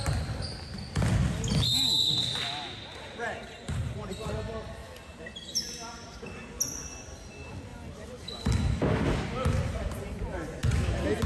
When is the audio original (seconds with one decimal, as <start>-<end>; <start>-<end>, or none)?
0.0-3.6; 4.3-4.8; 6.2-7.7; 8.4-11.3